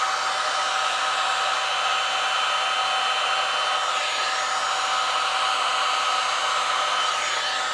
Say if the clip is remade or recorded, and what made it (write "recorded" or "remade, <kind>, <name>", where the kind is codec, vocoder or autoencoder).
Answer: recorded